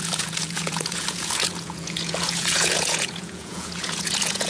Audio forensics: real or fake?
fake